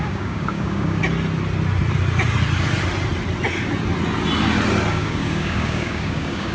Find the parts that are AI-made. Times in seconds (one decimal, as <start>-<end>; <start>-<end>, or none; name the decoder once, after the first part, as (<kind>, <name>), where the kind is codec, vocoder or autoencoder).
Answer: 0.0-1.0 (codec, DAC); 4.9-6.5